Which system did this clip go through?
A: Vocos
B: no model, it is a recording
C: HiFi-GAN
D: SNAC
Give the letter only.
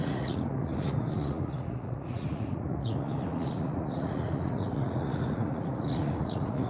A